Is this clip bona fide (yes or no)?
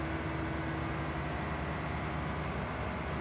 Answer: yes